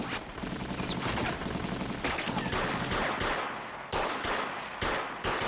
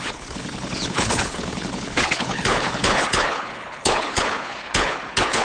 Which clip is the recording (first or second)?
first